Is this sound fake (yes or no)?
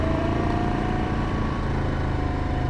yes